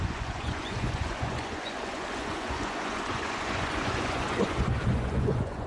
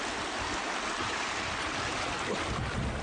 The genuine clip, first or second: second